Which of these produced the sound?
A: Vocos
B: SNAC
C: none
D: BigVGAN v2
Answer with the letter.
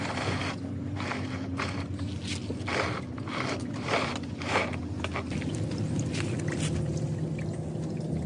C